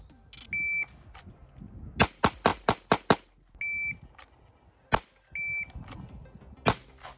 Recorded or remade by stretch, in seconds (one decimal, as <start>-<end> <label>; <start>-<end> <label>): 0.0-7.2 recorded